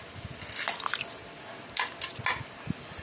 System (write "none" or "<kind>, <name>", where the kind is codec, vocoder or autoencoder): none